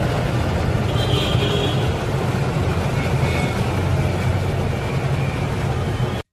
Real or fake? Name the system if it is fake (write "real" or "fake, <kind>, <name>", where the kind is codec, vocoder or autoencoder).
real